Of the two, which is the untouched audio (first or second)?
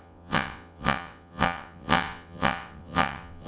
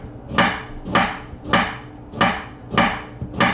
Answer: second